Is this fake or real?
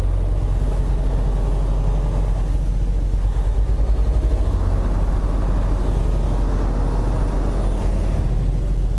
real